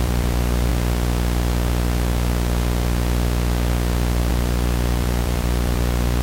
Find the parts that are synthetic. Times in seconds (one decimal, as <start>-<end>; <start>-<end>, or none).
0.0-0.7; 4.3-6.2